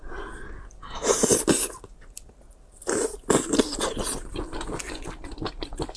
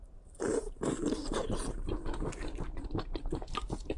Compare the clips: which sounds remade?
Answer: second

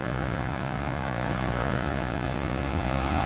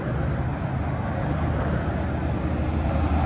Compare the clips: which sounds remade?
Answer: first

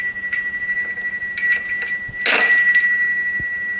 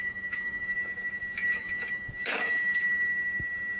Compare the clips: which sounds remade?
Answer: second